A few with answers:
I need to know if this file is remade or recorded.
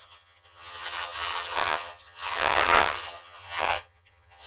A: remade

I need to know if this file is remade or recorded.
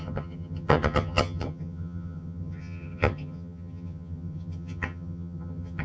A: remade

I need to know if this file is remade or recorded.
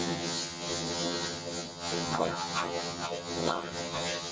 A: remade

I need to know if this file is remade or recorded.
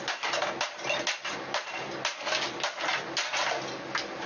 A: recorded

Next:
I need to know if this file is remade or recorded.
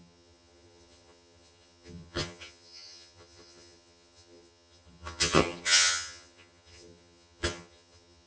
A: remade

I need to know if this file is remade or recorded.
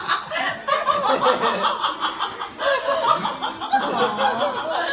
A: recorded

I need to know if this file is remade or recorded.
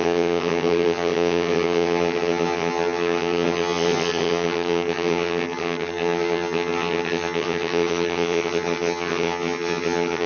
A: remade